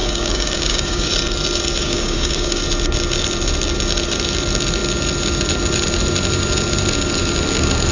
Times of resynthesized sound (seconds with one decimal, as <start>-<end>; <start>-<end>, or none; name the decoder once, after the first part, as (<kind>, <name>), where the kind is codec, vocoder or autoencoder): 0.0-1.1 (codec, DAC); 1.8-2.6

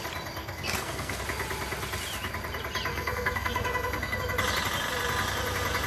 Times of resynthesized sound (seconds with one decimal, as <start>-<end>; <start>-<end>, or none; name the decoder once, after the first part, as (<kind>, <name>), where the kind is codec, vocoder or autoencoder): 0.4-1.2 (codec, SNAC); 2.9-4.2

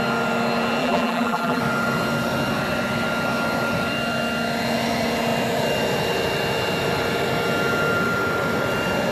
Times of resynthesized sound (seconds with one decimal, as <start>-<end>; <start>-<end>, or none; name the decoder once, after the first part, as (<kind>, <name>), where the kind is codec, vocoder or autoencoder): 0.8-1.6 (vocoder, BigVGAN v2)

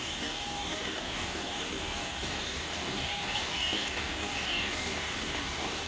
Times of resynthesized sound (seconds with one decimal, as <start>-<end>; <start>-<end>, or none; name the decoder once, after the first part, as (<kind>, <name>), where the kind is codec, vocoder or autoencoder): 0.0-5.9 (codec, DAC)

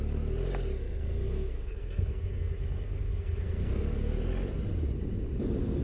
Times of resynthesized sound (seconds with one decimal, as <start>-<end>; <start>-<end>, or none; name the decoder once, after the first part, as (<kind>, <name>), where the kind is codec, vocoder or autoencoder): 0.8-4.1 (codec, SNAC)

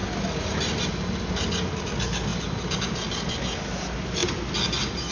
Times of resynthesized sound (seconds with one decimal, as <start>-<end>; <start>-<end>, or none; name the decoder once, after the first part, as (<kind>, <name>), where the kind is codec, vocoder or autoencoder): none